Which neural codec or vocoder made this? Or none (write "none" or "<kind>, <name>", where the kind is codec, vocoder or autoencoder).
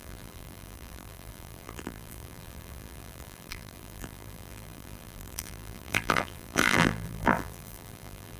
vocoder, BigVGAN v2